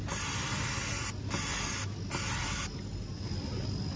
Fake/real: real